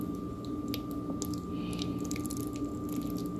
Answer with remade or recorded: recorded